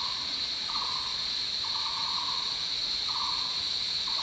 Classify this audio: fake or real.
fake